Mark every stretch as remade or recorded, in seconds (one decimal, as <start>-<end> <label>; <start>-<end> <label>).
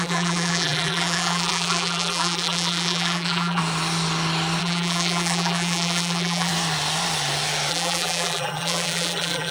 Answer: 0.0-3.6 remade; 3.6-4.6 recorded; 4.6-6.5 remade; 6.5-7.7 recorded; 7.7-9.5 remade